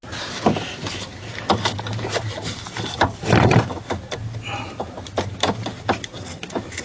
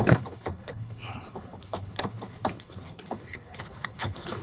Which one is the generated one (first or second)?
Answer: second